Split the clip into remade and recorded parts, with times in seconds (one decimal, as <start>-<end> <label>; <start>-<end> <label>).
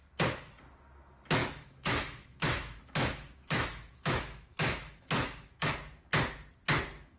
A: 0.0-1.4 recorded; 1.4-5.7 remade; 5.7-7.2 recorded